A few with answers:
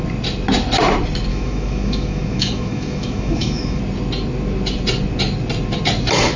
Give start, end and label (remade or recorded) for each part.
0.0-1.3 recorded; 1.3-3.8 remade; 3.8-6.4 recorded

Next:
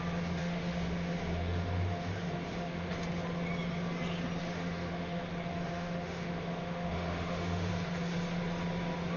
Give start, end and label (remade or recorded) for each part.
0.0-0.4 recorded; 0.4-2.9 remade; 2.9-4.4 recorded; 4.4-5.2 remade; 5.2-5.7 recorded; 5.7-7.7 remade; 7.7-9.2 recorded

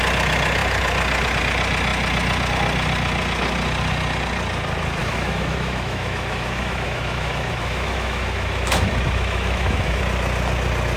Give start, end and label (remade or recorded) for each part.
0.0-5.0 recorded; 5.0-10.0 remade; 10.0-11.0 recorded

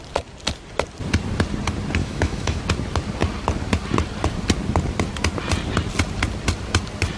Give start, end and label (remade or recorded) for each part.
0.0-2.0 recorded; 2.0-2.6 remade; 2.6-7.2 recorded

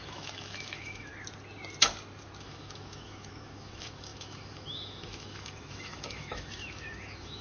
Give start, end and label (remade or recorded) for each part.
0.0-1.1 remade; 1.1-2.4 recorded; 2.4-7.4 remade

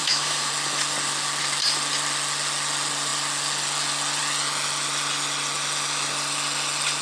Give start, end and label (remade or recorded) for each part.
0.0-0.5 remade; 0.5-7.0 recorded

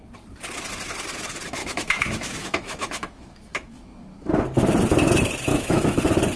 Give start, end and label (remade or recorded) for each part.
0.0-1.6 recorded; 1.6-4.3 remade; 4.3-5.5 recorded; 5.5-6.0 remade; 6.0-6.4 recorded

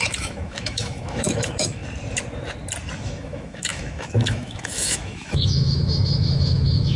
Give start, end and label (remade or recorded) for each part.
0.0-1.8 remade; 1.8-3.0 recorded; 3.0-7.0 remade